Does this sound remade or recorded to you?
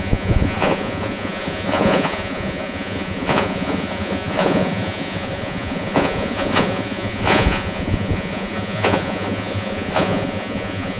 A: remade